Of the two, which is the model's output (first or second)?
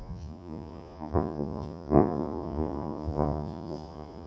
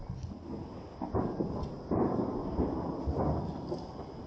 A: first